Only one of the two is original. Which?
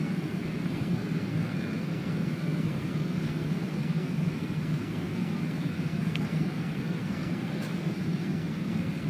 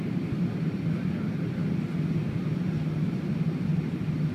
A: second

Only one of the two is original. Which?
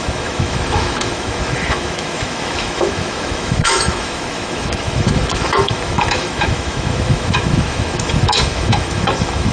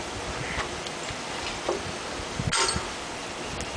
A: second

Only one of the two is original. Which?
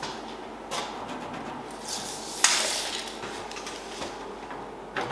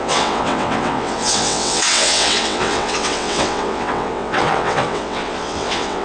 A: first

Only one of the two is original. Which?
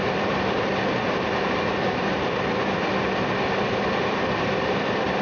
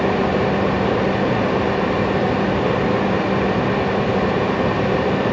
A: second